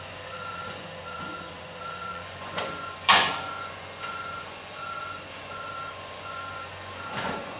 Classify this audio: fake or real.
fake